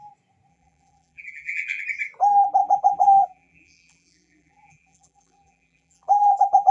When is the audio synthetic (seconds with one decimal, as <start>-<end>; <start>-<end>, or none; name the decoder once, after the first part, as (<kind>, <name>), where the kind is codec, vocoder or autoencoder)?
0.5-1.8 (vocoder, BigVGAN v2); 2.6-6.7